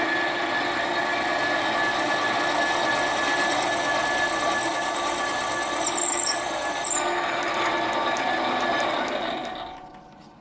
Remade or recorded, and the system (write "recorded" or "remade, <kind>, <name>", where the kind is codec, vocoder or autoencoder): recorded